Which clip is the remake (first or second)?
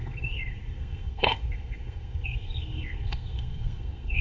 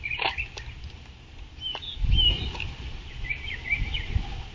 first